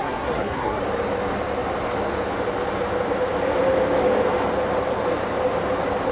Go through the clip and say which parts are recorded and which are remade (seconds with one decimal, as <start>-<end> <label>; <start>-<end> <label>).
0.0-0.8 remade; 0.8-6.1 recorded